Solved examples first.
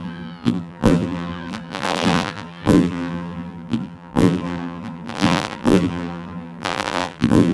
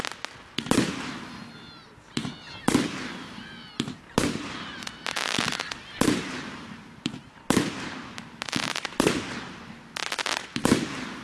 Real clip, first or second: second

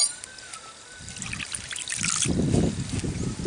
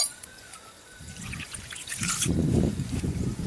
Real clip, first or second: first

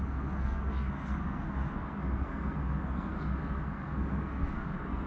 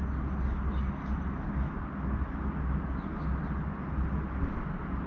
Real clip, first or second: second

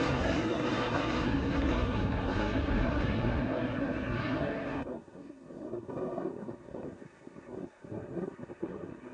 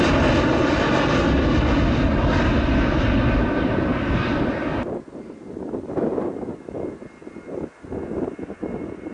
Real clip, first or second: second